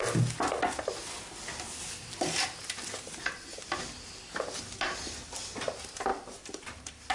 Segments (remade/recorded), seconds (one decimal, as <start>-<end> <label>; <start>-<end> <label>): 0.0-6.1 recorded; 6.1-7.1 remade